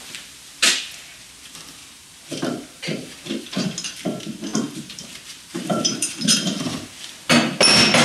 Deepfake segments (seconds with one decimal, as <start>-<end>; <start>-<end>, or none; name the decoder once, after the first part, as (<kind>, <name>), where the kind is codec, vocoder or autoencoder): 1.8-3.4 (vocoder, BigVGAN v2); 4.5-7.1